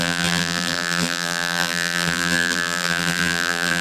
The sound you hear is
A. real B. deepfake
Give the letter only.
B